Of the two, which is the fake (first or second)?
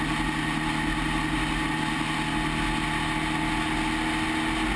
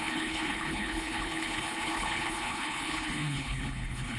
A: second